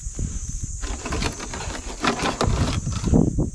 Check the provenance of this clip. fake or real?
real